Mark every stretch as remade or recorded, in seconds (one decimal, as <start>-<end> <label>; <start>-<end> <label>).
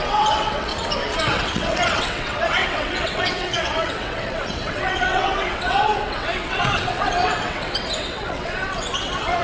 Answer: 0.0-0.7 remade; 0.7-1.2 recorded; 1.2-9.4 remade